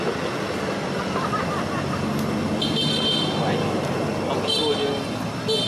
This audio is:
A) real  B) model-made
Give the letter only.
A